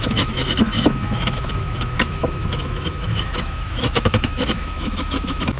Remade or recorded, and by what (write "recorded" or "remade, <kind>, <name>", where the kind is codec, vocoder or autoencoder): remade, autoencoder, DAC-VAE